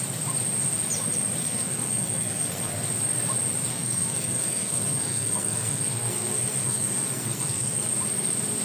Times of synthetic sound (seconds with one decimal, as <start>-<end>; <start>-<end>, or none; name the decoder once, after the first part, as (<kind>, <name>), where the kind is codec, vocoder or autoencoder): 1.4-2.7 (codec, SNAC); 3.7-7.9